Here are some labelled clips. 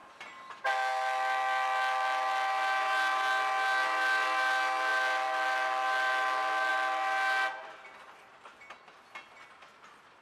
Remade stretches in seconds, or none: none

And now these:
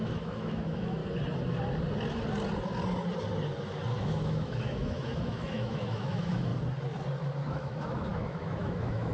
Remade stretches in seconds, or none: 0.0-1.0 (autoencoder, DAC-VAE); 4.0-6.5; 7.5-9.1

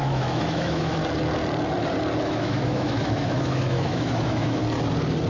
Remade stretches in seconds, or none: 0.0-1.0 (autoencoder, DAC-VAE); 2.2-4.6

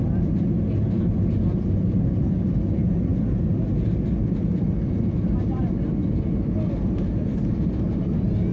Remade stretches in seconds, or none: none